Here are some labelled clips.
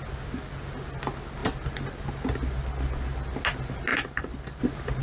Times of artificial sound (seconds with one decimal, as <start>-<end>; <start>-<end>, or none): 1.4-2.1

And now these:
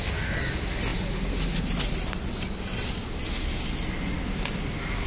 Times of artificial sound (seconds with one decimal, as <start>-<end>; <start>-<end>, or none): none

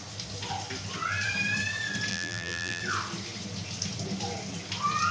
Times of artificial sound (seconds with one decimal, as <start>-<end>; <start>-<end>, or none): 2.1-2.8